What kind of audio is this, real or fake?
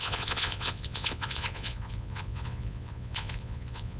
fake